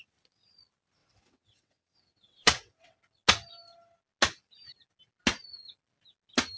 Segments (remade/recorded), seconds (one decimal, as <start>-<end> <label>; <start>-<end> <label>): 0.0-1.0 recorded; 1.0-3.0 remade; 3.0-6.6 recorded